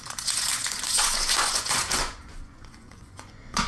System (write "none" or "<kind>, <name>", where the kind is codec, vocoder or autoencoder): vocoder, Vocos